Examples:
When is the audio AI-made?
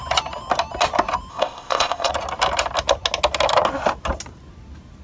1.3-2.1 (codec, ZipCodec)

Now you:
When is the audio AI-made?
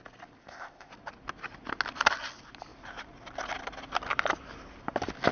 0.4-0.9 (codec, ZipCodec)